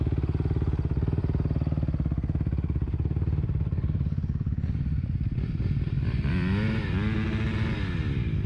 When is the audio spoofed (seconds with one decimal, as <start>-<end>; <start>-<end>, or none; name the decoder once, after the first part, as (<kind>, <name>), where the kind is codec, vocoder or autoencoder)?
1.2-6.3 (vocoder, BigVGAN v2)